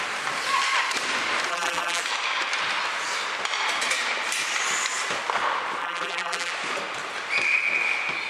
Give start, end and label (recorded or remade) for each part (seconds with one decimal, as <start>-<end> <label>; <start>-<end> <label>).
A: 0.0-1.5 recorded; 1.5-2.0 remade; 2.0-5.8 recorded; 5.8-6.5 remade; 6.5-8.3 recorded

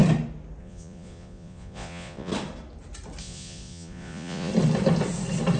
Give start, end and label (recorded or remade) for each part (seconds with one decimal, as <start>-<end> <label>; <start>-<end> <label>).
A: 0.0-0.6 recorded; 0.6-2.3 remade; 2.3-3.2 recorded; 3.2-4.5 remade; 4.5-5.6 recorded

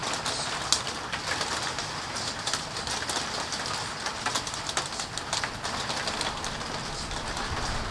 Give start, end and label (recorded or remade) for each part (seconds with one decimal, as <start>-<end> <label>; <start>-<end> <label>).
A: 0.0-7.9 recorded

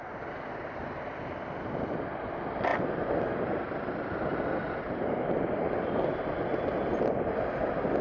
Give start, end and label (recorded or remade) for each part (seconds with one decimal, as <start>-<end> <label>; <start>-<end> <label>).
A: 0.0-8.0 recorded

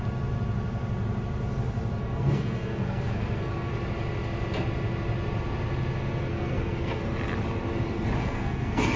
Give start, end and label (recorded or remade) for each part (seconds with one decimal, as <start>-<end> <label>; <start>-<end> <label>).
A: 0.0-2.0 recorded; 2.0-3.7 remade; 3.7-6.3 recorded; 6.3-7.0 remade; 7.0-8.2 recorded; 8.2-9.0 remade

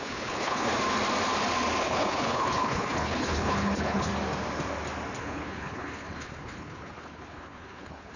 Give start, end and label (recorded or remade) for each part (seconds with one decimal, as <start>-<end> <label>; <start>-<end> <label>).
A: 0.0-0.7 remade; 0.7-1.8 recorded; 1.8-4.1 remade; 4.1-5.2 recorded; 5.2-8.2 remade

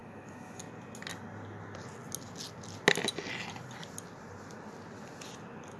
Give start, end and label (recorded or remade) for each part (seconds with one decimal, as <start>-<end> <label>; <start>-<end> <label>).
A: 0.0-0.6 remade; 0.6-5.8 recorded

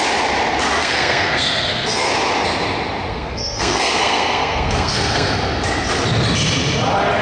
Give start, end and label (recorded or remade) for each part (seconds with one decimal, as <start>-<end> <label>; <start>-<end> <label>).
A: 0.0-0.8 recorded; 0.8-2.1 remade; 2.1-3.1 recorded; 3.1-5.3 remade; 5.3-7.2 recorded